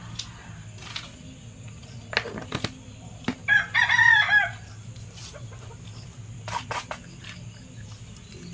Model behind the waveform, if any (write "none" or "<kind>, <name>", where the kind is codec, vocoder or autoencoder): none